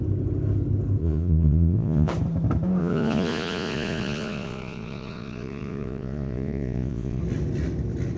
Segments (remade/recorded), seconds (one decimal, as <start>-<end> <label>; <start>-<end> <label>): 0.0-1.0 recorded; 1.0-2.1 remade; 2.1-2.8 recorded; 2.8-7.2 remade; 7.2-8.2 recorded